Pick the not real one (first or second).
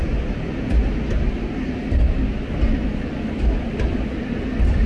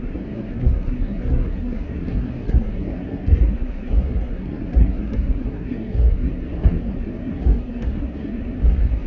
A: second